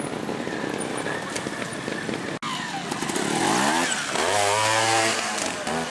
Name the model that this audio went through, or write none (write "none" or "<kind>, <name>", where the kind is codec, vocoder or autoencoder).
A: none